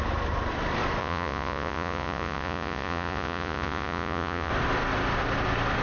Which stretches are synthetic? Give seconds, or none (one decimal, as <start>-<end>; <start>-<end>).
1.0-4.5